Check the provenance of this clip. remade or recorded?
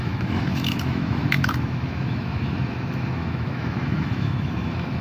remade